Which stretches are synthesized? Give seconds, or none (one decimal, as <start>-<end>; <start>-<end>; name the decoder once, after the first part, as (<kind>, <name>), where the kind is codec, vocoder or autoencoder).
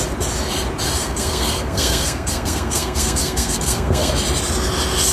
1.0-4.1 (codec, SNAC)